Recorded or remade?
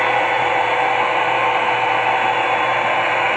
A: recorded